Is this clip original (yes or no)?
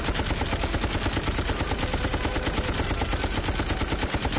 yes